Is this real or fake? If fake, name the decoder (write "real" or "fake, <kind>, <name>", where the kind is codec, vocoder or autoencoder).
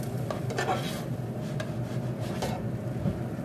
real